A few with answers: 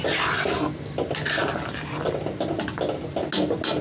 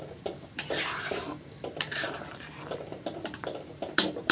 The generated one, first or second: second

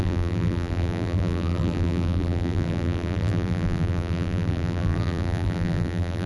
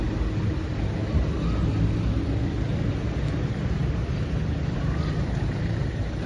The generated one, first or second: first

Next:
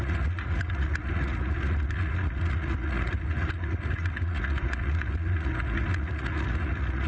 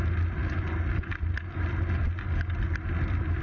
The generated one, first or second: first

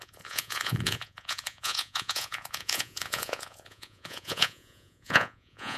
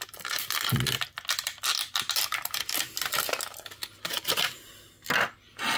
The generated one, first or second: first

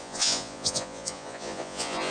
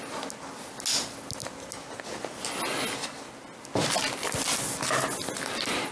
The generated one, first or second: first